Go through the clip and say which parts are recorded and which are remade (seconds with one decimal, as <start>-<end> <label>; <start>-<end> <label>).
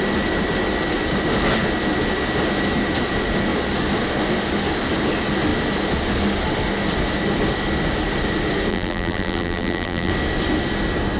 0.0-8.7 recorded; 8.7-10.1 remade; 10.1-11.2 recorded